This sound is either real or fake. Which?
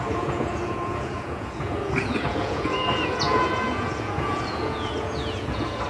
fake